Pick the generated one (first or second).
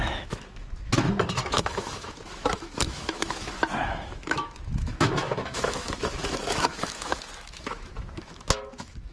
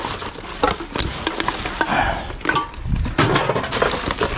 first